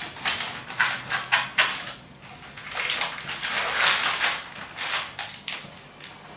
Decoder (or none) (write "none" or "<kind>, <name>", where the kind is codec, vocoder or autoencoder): none